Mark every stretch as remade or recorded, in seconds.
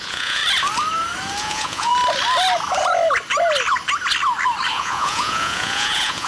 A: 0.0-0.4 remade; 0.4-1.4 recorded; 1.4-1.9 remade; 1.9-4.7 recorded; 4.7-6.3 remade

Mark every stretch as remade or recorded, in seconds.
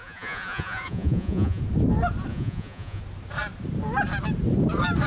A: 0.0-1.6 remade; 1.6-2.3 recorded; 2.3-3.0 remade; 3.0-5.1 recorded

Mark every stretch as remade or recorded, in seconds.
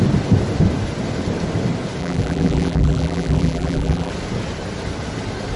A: 0.0-2.0 recorded; 2.0-4.1 remade; 4.1-5.6 recorded